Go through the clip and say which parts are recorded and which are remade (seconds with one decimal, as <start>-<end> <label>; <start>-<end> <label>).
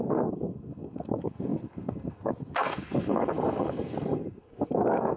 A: 0.0-5.2 remade